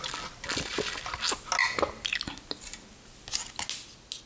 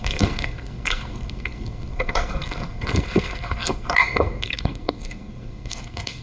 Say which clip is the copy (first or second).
second